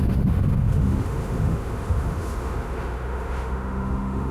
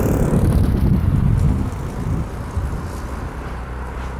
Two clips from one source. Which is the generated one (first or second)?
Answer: first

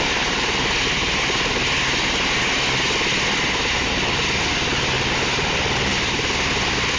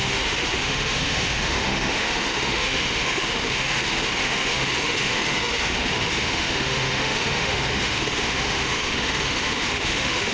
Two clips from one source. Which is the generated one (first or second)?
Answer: second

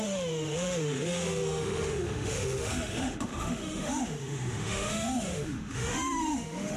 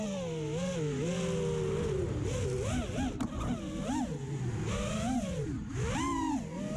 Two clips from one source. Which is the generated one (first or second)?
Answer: first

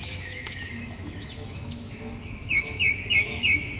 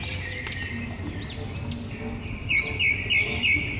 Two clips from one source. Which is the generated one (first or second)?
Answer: first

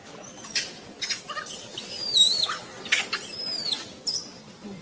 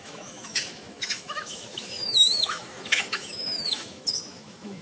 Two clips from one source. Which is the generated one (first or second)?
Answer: second